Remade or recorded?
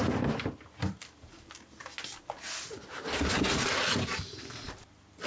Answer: recorded